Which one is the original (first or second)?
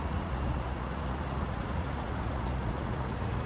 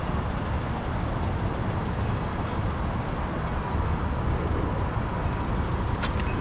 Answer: second